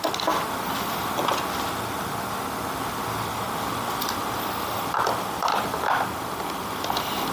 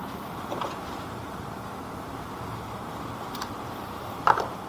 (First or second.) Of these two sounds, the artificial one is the second